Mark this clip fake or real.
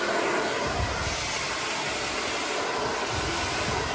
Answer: real